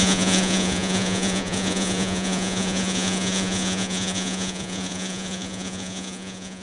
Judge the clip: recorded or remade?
remade